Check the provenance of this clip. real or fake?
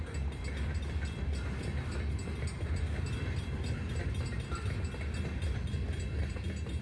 real